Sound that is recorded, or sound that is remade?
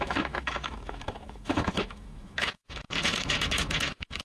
remade